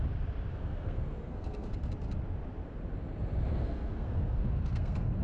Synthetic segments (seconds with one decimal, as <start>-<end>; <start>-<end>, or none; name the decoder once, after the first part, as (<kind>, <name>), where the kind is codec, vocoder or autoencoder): 0.5-1.9 (codec, SNAC); 3.5-5.2